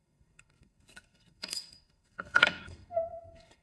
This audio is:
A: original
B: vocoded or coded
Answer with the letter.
B